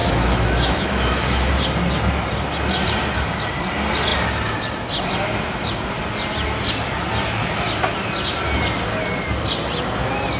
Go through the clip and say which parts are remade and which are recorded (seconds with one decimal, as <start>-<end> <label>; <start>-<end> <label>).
0.0-1.5 remade; 1.5-10.4 recorded